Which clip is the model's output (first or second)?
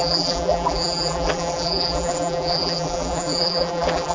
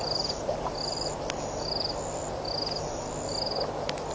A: first